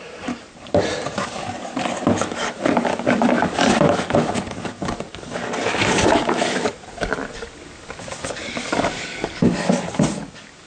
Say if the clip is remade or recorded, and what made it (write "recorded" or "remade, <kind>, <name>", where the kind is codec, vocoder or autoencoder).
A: remade, codec, DAC